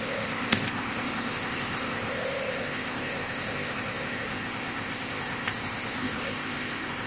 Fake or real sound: fake